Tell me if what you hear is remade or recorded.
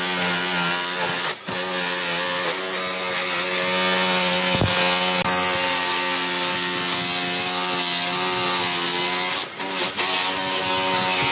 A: recorded